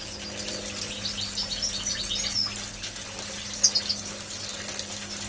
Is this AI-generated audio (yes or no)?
no